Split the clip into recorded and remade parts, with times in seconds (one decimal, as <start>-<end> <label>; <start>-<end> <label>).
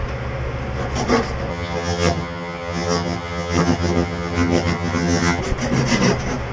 0.0-1.5 recorded; 1.5-5.4 remade; 5.4-6.5 recorded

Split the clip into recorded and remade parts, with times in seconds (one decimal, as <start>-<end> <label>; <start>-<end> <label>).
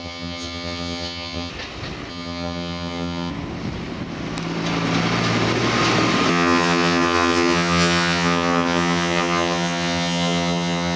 0.0-1.5 remade; 1.5-2.1 recorded; 2.1-3.3 remade; 3.3-6.3 recorded; 6.3-11.0 remade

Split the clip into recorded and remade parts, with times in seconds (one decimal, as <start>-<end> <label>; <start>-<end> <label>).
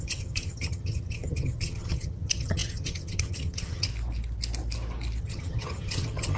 0.0-3.9 remade; 3.9-5.2 recorded; 5.2-6.4 remade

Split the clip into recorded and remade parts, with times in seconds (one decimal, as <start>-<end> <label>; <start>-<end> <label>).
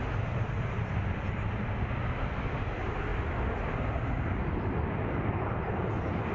0.0-6.3 recorded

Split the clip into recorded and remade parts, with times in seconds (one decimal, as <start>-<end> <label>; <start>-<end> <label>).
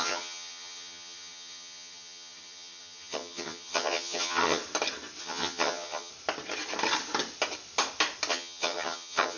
0.0-4.6 remade; 4.6-5.2 recorded; 5.2-6.1 remade; 6.1-8.3 recorded; 8.3-9.4 remade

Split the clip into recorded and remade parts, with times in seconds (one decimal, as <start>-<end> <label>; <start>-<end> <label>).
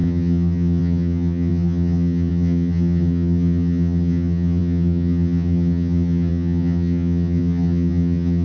0.0-8.4 remade